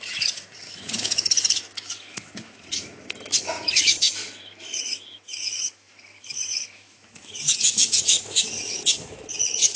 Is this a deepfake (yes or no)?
yes